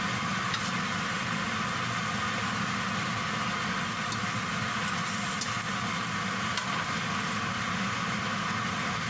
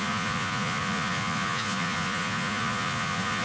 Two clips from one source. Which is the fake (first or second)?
second